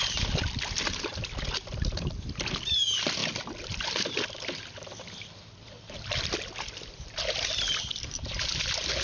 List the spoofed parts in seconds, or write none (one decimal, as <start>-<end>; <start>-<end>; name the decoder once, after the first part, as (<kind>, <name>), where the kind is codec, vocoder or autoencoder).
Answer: none